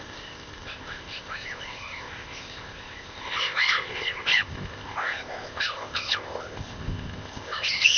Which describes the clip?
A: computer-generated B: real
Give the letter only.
A